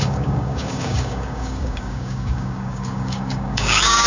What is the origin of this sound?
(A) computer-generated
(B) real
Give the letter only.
A